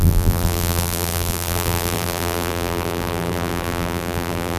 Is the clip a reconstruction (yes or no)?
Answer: yes